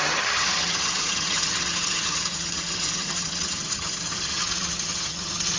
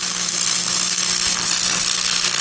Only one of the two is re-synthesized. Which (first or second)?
first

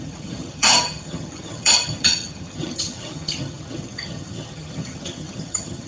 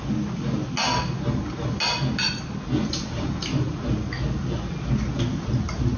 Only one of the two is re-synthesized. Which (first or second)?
first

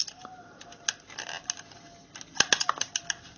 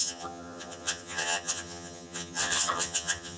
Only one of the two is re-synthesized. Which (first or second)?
second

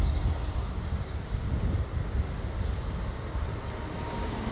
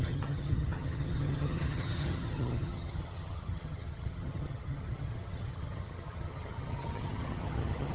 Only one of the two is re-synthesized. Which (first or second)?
second